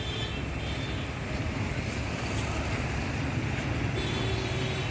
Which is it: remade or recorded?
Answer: recorded